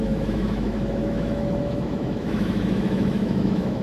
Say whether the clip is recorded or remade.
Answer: remade